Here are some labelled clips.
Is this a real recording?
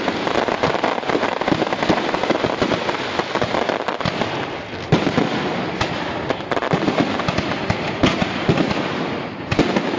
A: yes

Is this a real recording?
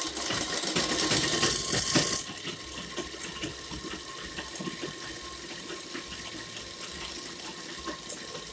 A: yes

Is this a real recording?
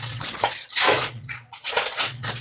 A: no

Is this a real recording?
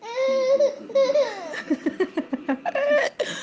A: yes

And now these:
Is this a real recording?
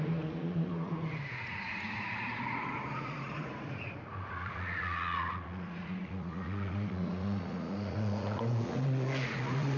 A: no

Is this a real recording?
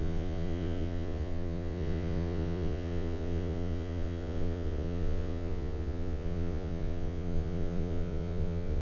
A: no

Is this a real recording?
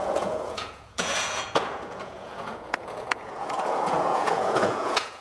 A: no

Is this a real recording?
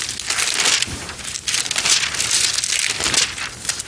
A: yes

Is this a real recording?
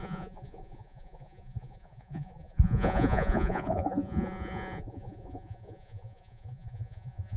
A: no